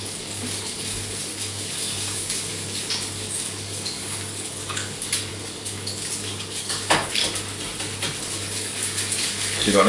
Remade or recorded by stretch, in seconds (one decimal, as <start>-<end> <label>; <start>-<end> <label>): 0.0-7.2 remade; 7.2-8.2 recorded; 8.2-9.9 remade